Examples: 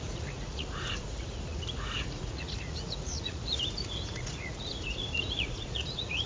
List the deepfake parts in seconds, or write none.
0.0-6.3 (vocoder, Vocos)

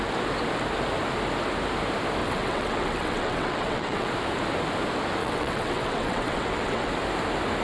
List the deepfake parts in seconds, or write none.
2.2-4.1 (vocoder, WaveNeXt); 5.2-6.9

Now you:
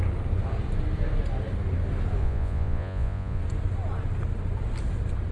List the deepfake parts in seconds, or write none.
2.2-3.4 (vocoder, Vocos)

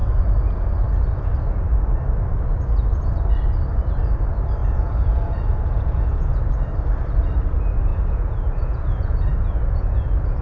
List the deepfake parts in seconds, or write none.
4.6-6.5 (vocoder, Vocos); 7.9-10.4